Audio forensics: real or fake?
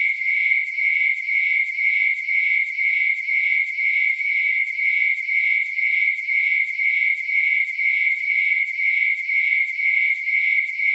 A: fake